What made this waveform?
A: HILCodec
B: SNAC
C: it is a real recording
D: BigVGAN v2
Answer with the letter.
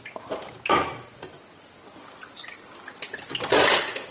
C